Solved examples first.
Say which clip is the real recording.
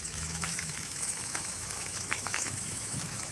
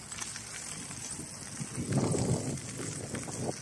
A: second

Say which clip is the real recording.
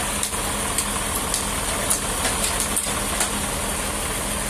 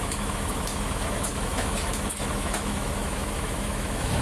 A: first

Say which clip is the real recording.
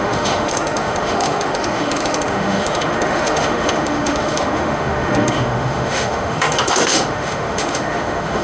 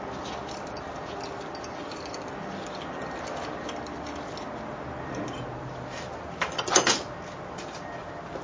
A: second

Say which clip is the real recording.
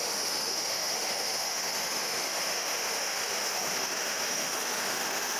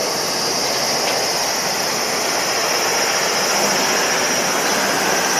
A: second